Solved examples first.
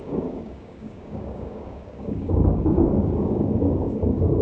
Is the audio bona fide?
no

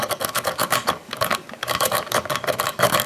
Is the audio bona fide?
no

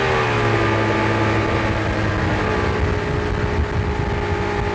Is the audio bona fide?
yes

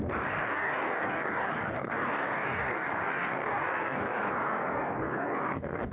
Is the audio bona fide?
no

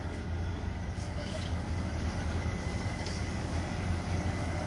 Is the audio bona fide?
no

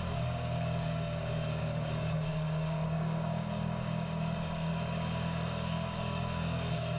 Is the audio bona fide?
no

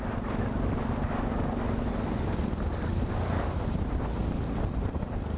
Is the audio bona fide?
yes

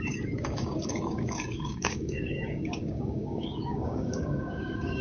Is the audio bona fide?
no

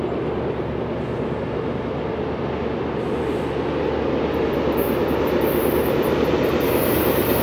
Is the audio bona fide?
yes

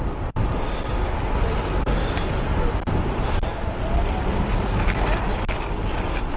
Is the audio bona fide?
yes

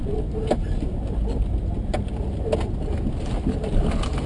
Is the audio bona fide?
yes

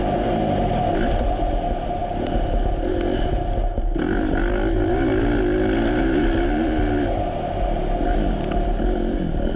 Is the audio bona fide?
yes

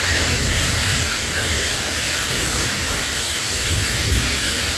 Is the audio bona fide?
no